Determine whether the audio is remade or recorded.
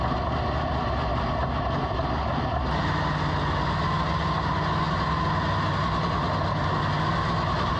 recorded